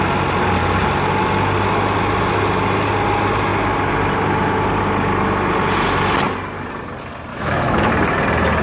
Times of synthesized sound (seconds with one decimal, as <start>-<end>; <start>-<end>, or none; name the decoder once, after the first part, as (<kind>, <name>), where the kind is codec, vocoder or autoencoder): 7.3-7.9 (autoencoder, DAC-VAE)